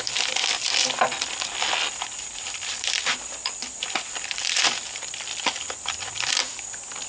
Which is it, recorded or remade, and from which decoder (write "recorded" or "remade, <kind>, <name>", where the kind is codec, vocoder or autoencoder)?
remade, vocoder, BigVGAN v2